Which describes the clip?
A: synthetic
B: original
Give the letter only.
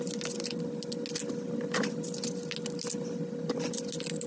B